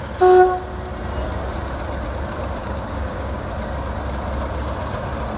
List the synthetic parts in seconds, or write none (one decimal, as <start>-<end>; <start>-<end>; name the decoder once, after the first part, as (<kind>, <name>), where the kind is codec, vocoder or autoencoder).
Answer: 2.6-3.5 (codec, DAC)